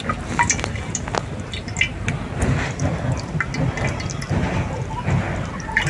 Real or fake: real